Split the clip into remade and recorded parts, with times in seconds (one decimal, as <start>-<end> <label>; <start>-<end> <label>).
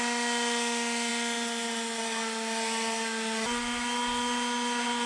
0.0-5.1 recorded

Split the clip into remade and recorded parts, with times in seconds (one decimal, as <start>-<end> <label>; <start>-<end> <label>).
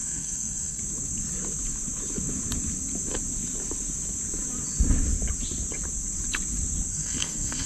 0.0-0.8 remade; 0.8-6.9 recorded; 6.9-7.7 remade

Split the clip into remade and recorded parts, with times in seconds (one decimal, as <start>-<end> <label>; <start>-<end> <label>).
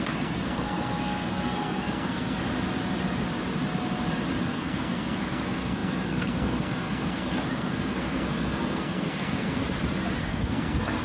0.0-2.4 remade; 2.4-4.4 recorded; 4.4-9.6 remade; 9.6-10.2 recorded; 10.2-11.0 remade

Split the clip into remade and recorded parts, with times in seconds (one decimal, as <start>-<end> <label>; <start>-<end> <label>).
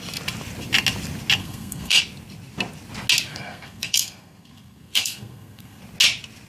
0.0-1.4 recorded; 1.4-2.0 remade; 2.0-3.3 recorded; 3.3-5.8 remade; 5.8-6.5 recorded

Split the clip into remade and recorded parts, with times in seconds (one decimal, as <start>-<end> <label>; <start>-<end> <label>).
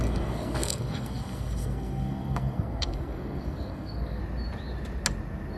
0.0-4.2 remade; 4.2-5.6 recorded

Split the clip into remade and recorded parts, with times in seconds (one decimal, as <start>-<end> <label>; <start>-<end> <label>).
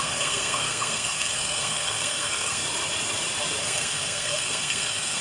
0.0-2.6 remade; 2.6-3.6 recorded; 3.6-5.2 remade